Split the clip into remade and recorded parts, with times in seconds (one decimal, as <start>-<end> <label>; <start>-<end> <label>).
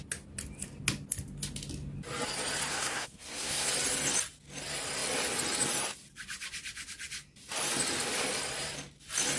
0.0-2.7 recorded; 2.7-3.7 remade; 3.7-9.4 recorded